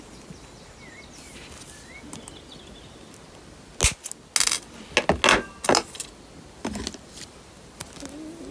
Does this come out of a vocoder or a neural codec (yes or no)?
no